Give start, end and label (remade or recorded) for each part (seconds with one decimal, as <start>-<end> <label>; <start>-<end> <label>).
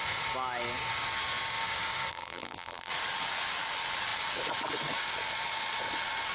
0.0-2.1 recorded; 2.1-2.9 remade; 2.9-6.3 recorded